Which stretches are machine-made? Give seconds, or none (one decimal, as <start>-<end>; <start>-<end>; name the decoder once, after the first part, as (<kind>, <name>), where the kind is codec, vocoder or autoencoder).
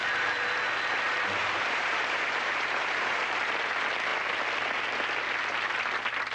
0.0-0.5 (vocoder, BigVGAN v2); 1.4-3.3